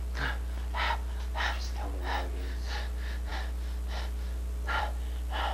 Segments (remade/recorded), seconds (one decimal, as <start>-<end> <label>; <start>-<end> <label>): 0.0-5.5 recorded